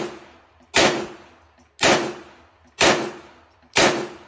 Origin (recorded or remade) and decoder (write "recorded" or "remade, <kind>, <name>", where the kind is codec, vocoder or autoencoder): recorded